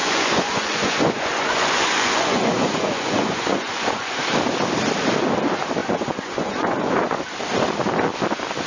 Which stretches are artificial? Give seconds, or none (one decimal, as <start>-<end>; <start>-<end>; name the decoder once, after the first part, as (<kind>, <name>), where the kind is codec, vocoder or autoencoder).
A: 0.0-4.2 (vocoder, Vocos); 5.8-7.2